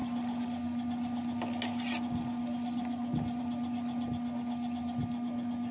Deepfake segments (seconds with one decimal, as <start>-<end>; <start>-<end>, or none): none